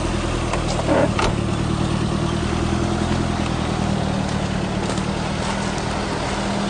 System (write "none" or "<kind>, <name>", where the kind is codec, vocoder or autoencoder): none